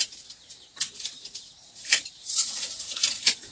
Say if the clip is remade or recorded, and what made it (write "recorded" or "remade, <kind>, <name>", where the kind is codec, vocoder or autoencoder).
remade, vocoder, Vocos